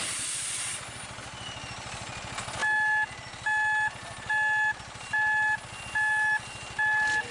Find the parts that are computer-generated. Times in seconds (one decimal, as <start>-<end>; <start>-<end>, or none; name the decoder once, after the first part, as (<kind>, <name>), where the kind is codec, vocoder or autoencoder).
none